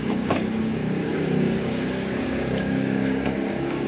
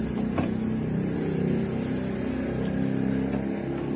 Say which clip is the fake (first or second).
first